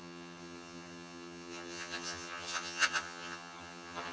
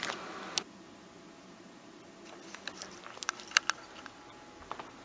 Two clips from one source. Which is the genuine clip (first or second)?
second